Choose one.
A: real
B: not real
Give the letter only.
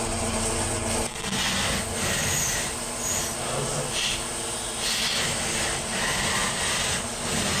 A